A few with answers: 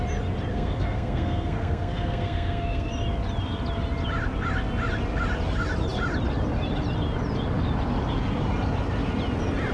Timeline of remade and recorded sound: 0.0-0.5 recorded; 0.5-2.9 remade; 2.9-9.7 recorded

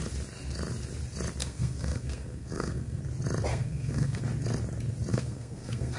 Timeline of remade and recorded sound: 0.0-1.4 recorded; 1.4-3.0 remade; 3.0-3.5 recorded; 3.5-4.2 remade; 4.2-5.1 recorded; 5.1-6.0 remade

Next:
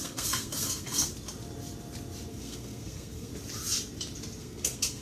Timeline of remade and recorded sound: 0.0-1.1 remade; 1.1-2.3 recorded; 2.3-3.3 remade; 3.3-4.4 recorded; 4.4-5.0 remade

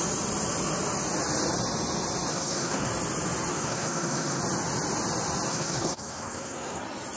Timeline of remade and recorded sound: 0.0-2.3 recorded; 2.3-2.9 remade; 2.9-3.5 recorded; 3.5-4.4 remade; 4.4-5.5 recorded; 5.5-6.8 remade; 6.8-7.2 recorded

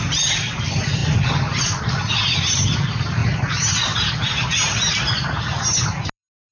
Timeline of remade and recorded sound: 0.0-6.5 recorded